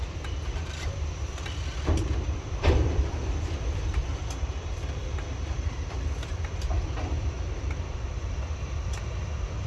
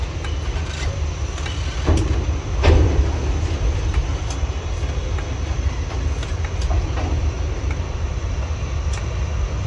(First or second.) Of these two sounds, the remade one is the first